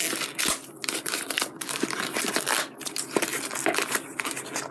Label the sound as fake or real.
real